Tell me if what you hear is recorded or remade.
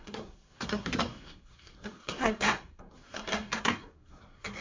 remade